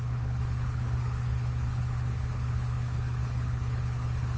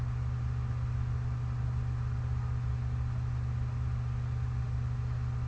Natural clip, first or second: second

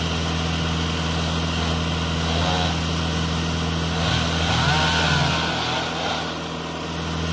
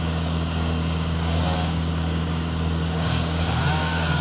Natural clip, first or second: first